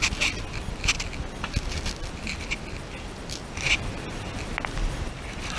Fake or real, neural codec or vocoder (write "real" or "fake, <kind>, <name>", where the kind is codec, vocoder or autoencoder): real